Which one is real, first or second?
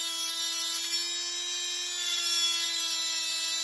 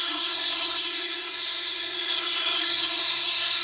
first